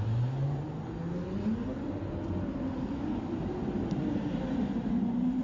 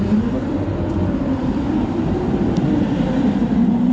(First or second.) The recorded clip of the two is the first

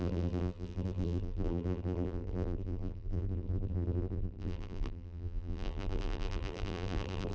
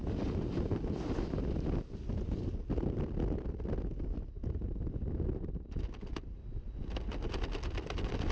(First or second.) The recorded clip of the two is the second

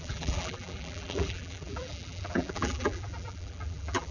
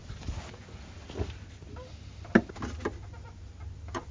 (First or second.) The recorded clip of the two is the second